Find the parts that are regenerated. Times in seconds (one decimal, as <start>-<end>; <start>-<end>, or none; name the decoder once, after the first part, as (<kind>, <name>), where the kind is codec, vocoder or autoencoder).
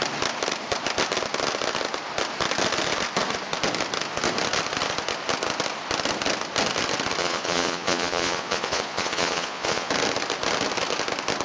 7.2-9.9 (vocoder, Vocos)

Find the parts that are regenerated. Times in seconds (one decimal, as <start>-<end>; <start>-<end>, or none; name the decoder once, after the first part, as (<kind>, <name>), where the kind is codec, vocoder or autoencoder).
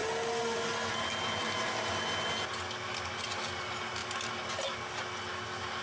none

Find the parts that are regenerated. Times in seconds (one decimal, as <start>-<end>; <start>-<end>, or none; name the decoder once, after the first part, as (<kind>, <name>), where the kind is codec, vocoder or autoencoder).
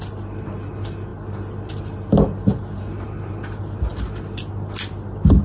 none